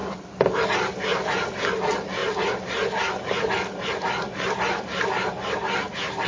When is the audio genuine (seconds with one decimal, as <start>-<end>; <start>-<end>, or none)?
0.0-0.7; 2.2-6.3